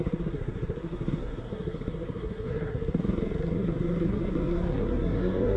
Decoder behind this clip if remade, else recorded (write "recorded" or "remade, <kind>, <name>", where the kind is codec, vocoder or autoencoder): remade, codec, SNAC